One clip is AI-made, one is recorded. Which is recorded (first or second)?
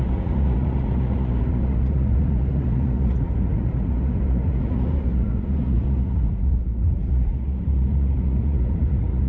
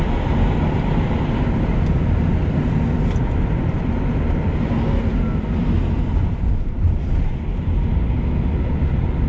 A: second